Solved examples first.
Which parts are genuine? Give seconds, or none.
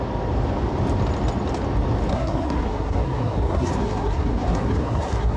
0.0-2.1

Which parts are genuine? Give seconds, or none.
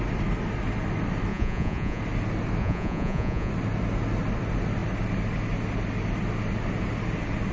0.0-1.3; 2.0-2.6; 3.5-7.5